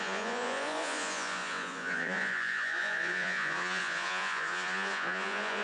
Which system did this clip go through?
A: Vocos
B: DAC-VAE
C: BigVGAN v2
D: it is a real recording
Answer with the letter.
A